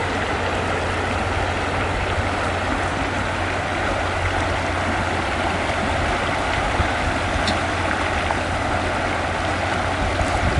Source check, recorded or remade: recorded